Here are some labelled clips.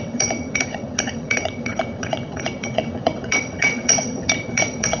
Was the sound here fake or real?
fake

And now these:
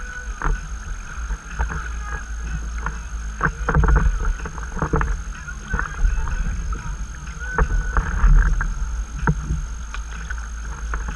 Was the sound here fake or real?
real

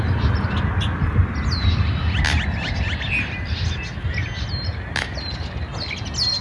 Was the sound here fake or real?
real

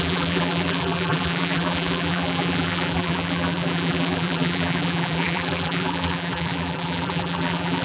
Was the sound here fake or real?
fake